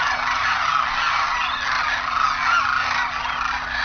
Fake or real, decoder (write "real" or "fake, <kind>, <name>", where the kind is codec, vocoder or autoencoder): real